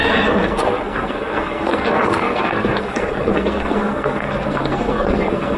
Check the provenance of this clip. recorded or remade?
remade